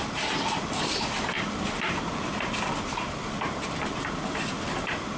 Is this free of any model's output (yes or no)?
yes